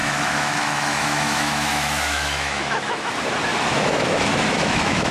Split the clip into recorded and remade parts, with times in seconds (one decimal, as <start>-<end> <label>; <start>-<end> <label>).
0.0-3.1 remade; 3.1-3.5 recorded; 3.5-5.1 remade